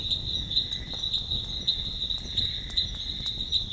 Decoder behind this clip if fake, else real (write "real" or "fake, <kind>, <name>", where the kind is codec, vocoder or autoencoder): real